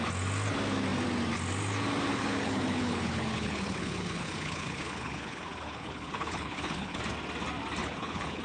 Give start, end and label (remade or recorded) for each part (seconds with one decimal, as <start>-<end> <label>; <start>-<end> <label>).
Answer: 0.0-2.1 recorded; 2.1-7.0 remade; 7.0-7.8 recorded; 7.8-8.4 remade